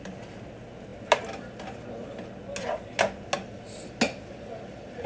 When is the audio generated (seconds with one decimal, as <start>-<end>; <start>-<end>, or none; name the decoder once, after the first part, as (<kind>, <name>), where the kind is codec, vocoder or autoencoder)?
none